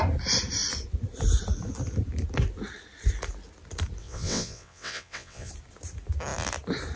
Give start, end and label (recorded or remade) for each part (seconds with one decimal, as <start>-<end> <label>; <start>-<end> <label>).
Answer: 0.0-4.0 recorded; 4.0-5.5 remade; 5.5-7.0 recorded